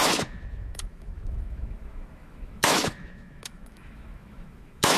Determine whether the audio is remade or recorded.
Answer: remade